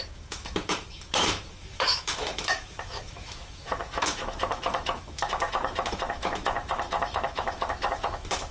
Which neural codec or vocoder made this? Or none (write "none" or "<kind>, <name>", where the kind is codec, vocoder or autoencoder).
autoencoder, DAC-VAE